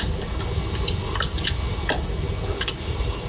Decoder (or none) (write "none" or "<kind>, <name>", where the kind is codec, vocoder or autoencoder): none